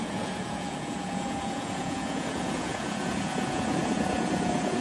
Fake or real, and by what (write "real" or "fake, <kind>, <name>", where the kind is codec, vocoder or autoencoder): fake, vocoder, Vocos